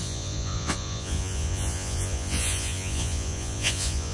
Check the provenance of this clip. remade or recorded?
remade